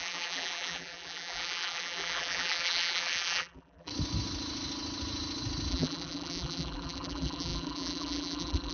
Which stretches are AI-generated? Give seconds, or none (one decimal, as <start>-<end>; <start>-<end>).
0.0-3.9; 5.7-8.7